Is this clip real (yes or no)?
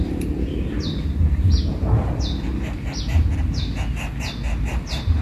yes